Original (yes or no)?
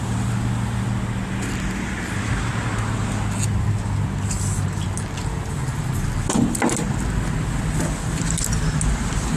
yes